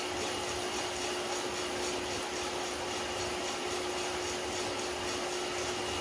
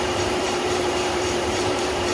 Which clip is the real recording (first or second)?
first